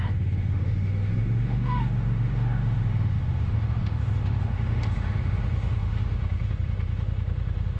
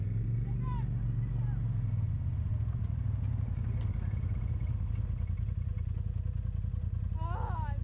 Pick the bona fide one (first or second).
second